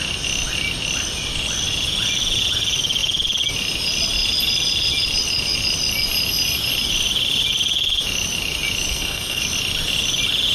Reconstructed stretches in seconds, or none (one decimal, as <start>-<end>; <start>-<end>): 8.9-9.4